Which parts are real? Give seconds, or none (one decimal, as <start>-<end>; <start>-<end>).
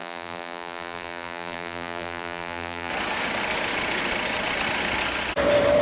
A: 2.9-5.8